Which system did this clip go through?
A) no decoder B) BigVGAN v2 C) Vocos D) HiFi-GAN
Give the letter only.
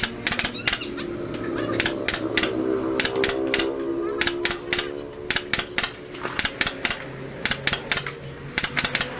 A